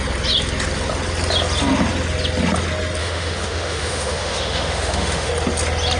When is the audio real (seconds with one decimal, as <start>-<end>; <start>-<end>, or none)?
0.0-3.0; 5.3-6.0